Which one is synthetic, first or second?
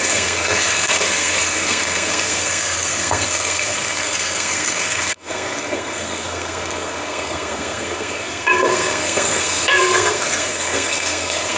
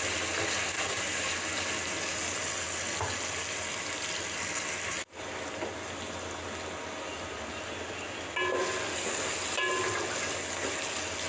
first